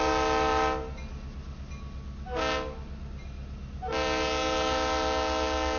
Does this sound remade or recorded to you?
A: recorded